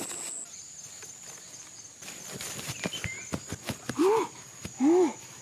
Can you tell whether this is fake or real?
real